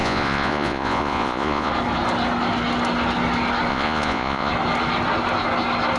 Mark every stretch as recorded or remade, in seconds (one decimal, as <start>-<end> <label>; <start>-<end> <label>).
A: 0.0-1.7 remade; 1.7-3.7 recorded; 3.7-4.5 remade; 4.5-6.0 recorded